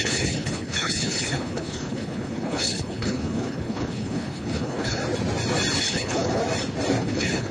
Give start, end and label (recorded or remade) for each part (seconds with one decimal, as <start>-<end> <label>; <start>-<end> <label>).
0.0-5.0 remade; 5.0-5.8 recorded; 5.8-6.4 remade; 6.4-7.0 recorded; 7.0-7.5 remade